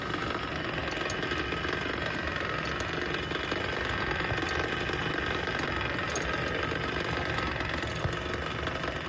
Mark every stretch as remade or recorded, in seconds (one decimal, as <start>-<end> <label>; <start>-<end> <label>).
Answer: 0.0-9.1 recorded